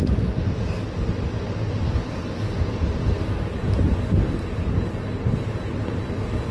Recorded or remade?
recorded